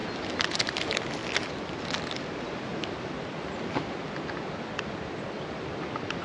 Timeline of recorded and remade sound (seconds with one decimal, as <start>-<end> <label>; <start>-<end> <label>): 0.0-6.2 recorded